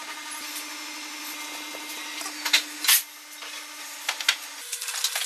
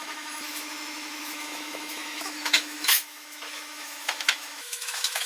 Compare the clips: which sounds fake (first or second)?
second